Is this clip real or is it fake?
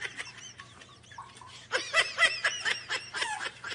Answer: fake